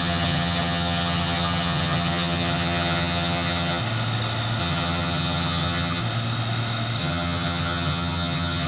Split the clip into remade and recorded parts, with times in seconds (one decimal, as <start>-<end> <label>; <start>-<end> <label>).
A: 0.0-3.8 remade; 3.8-4.6 recorded; 4.6-6.0 remade; 6.0-7.0 recorded; 7.0-8.7 remade